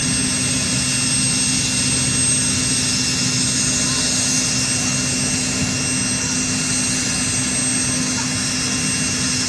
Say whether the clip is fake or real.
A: real